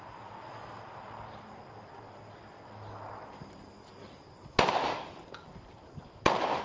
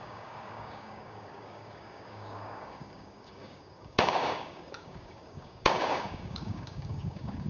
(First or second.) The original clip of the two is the first